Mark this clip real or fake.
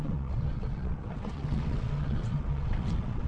fake